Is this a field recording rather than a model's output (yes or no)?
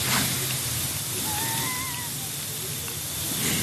yes